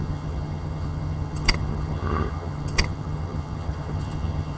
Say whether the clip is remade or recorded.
remade